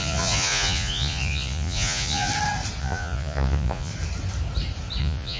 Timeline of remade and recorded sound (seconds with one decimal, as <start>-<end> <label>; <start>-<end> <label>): 0.0-2.3 remade; 2.3-2.8 recorded; 2.8-3.9 remade; 3.9-5.0 recorded; 5.0-5.4 remade